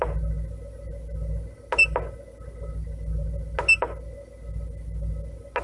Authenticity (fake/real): real